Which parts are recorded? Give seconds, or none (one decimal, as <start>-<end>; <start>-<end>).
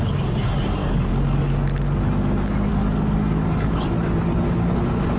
0.0-0.8; 1.5-2.7; 3.9-5.2